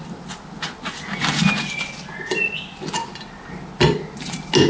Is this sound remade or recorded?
recorded